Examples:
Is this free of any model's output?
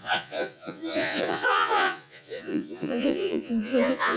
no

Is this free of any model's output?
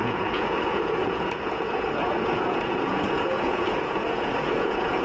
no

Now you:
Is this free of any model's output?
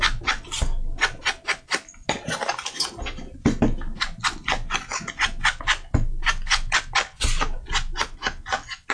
yes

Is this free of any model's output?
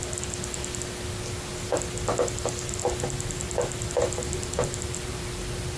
yes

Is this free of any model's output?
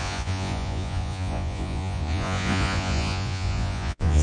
no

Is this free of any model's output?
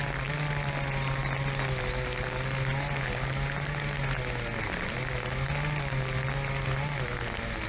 yes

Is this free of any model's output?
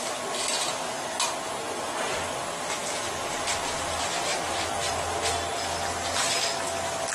yes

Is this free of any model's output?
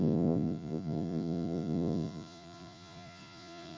no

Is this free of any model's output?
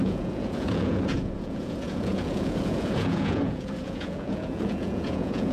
no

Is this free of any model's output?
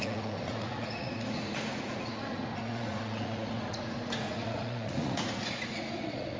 no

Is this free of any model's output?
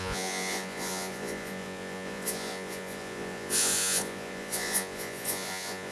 no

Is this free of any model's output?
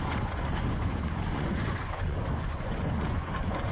no